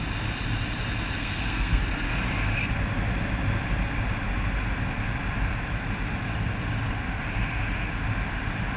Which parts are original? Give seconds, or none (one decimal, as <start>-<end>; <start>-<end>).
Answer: 0.0-1.2; 1.8-8.8